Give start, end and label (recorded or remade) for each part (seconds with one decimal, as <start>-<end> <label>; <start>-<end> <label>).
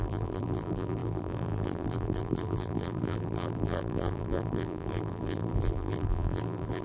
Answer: 0.0-6.8 remade